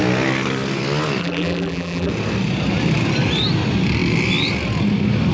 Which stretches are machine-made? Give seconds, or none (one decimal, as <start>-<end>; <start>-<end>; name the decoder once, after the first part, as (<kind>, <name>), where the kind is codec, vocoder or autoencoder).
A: 1.2-2.1 (vocoder, BigVGAN v2)